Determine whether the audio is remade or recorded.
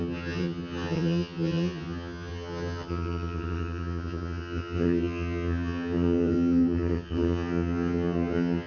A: remade